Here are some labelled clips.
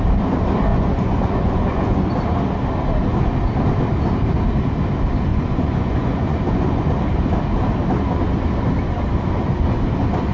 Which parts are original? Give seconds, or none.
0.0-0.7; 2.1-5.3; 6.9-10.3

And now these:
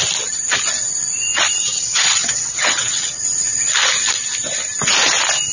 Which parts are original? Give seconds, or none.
0.0-1.7; 3.2-5.5

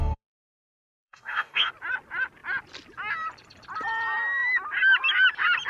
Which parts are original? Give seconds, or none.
0.5-1.0; 1.7-5.7

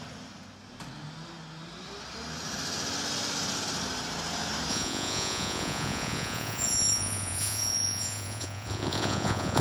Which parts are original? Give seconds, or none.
0.0-4.7

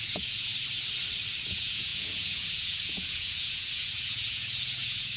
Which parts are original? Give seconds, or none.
0.5-1.4

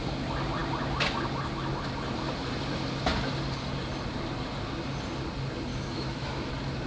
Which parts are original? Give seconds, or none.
0.0-5.7; 6.5-6.9

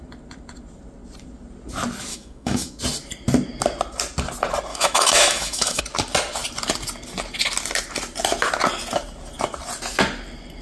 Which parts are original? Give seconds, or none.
0.0-2.1; 2.8-4.7; 5.8-10.6

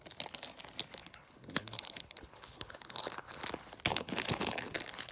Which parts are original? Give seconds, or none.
0.0-1.0; 3.4-3.9